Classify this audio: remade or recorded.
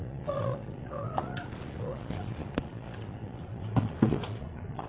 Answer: remade